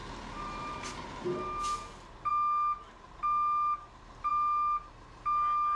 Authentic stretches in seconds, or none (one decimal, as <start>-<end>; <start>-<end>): 0.0-5.8